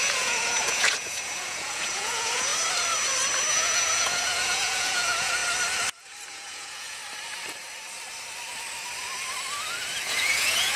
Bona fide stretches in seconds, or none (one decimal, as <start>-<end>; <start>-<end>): 2.5-3.5; 5.4-6.3; 7.0-10.0